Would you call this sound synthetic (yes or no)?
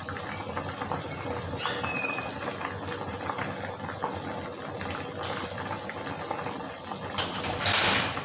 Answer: no